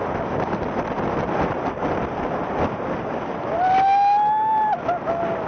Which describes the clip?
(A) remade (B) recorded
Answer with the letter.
B